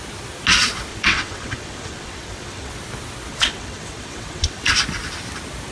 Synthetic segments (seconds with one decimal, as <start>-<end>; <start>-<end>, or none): 0.9-2.7; 3.3-4.7